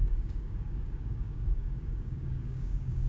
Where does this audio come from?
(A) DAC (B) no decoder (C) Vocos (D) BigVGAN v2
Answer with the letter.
A